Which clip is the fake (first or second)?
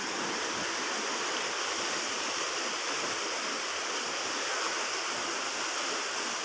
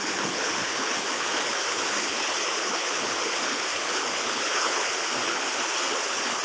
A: second